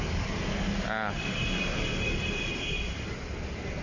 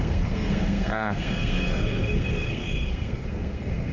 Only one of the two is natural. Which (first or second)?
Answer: first